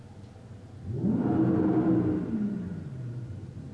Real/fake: real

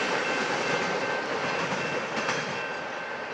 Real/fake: real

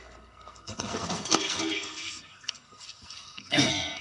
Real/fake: fake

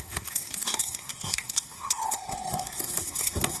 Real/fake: fake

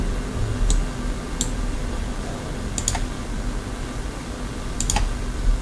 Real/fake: real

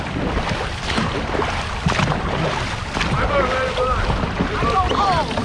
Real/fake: real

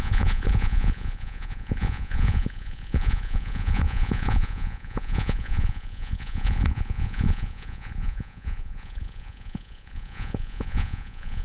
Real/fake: fake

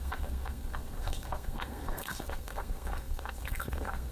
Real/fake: fake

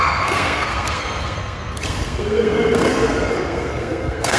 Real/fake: fake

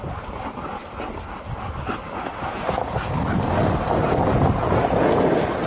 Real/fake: real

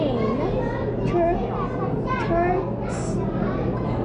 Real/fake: real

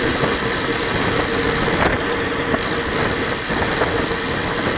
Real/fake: real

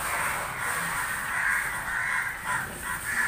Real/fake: real